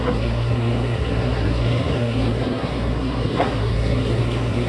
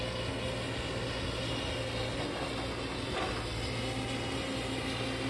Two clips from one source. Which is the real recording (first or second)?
second